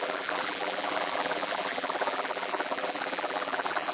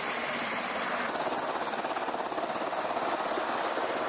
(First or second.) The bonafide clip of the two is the second